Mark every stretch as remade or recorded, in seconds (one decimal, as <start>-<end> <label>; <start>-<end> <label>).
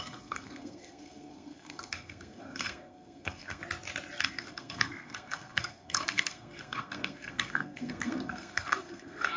0.0-3.6 remade; 3.6-4.2 recorded; 4.2-9.4 remade